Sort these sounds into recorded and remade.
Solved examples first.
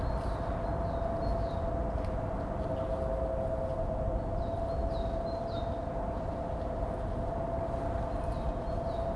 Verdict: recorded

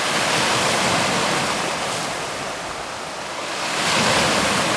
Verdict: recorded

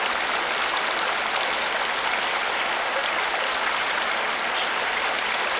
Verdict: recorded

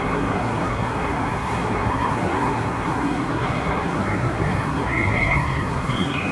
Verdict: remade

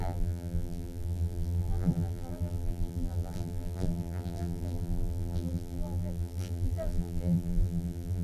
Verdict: remade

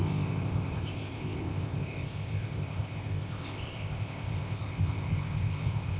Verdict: remade